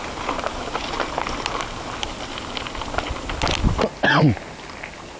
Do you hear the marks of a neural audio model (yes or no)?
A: no